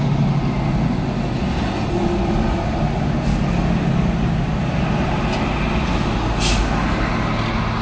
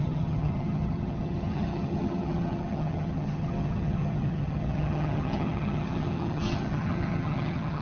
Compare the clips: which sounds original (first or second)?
first